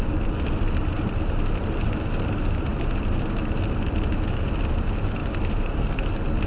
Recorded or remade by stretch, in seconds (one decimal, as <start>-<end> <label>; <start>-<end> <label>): 0.0-2.7 recorded; 2.7-4.4 remade; 4.4-5.2 recorded; 5.2-5.7 remade; 5.7-6.5 recorded